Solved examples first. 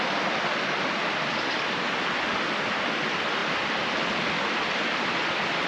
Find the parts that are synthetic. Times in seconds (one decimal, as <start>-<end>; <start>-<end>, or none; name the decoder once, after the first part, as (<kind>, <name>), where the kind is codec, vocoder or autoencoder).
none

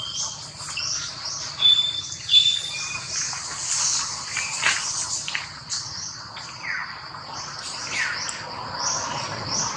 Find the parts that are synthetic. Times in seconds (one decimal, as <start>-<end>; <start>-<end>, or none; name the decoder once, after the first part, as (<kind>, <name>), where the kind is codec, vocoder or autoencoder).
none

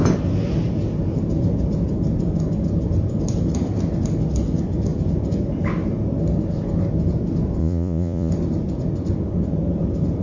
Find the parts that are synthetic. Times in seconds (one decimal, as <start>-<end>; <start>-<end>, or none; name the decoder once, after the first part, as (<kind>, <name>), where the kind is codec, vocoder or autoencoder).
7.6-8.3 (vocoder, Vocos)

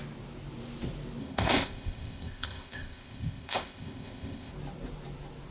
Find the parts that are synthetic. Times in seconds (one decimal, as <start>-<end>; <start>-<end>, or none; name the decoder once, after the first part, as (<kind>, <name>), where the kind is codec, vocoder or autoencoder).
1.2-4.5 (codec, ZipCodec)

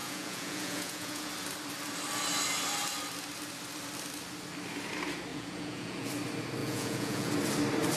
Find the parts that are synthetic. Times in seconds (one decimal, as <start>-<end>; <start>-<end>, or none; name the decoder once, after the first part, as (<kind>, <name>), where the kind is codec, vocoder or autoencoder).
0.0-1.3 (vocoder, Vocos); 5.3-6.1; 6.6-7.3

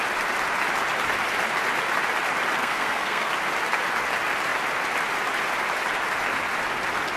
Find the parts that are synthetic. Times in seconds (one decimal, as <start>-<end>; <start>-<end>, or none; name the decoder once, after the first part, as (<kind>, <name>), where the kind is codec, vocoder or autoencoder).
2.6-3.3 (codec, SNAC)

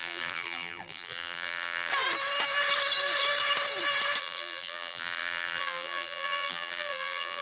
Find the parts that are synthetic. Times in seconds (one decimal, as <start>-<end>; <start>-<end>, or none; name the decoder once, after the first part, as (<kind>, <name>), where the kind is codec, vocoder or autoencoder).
0.0-1.9 (vocoder, BigVGAN v2); 4.2-7.4